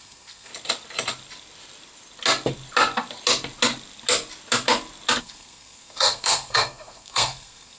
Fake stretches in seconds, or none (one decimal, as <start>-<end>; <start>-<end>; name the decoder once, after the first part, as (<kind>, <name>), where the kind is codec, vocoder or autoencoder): 0.0-0.5 (codec, SNAC); 5.2-7.8